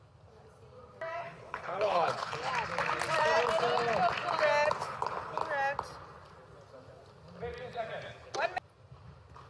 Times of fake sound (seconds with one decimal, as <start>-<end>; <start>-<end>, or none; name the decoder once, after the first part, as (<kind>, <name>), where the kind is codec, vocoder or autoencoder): 1.2-2.5 (codec, HILCodec); 4.8-5.4